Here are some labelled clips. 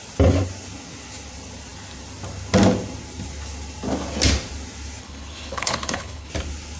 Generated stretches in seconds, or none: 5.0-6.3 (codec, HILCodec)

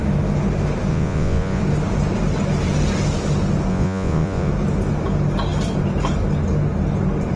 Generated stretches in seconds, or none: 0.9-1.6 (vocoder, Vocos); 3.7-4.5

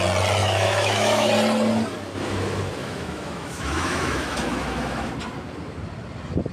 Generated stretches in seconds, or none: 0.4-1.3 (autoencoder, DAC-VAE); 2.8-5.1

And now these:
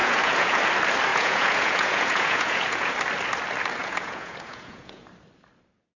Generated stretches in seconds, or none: 0.0-0.6 (vocoder, Vocos); 1.1-2.9; 3.8-5.0

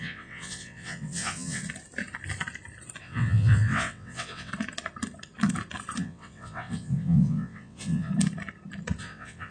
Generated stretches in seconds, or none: 0.0-1.6 (vocoder, WaveNeXt); 3.0-4.5; 6.0-8.1; 9.0-9.5